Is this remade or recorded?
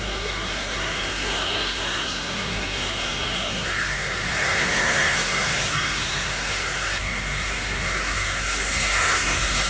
remade